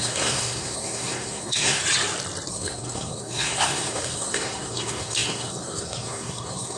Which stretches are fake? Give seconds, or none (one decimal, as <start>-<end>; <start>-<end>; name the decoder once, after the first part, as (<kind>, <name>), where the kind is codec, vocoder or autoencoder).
0.0-1.8 (codec, SNAC); 2.5-6.8